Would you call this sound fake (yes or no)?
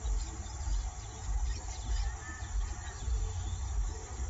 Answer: no